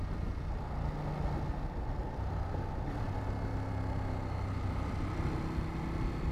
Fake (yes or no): no